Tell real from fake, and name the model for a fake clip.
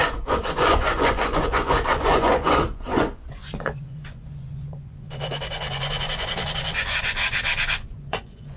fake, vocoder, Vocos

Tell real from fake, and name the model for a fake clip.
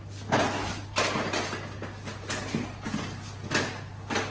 real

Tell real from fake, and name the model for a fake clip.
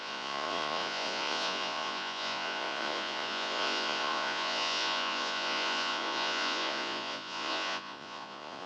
fake, vocoder, Vocos